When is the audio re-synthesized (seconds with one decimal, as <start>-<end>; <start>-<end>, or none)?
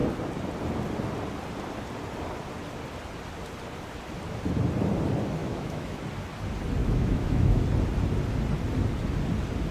5.4-6.0; 6.8-7.6